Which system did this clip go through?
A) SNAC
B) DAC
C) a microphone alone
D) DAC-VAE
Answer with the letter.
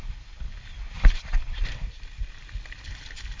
C